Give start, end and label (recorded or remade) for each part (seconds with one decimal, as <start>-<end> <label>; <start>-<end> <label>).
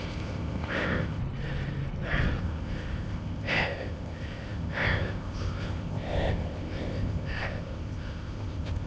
0.0-1.2 remade; 1.2-2.4 recorded; 2.4-8.9 remade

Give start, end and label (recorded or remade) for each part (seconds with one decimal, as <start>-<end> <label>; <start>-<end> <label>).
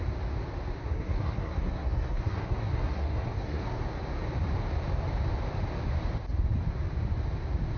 0.0-0.8 recorded; 0.8-3.8 remade; 3.8-7.8 recorded